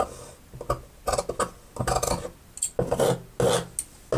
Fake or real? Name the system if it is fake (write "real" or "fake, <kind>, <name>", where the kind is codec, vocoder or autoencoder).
real